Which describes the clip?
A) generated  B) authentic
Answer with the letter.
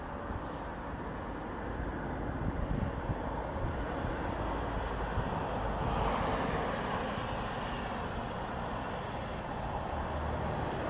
B